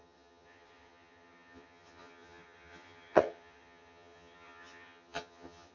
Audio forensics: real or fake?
fake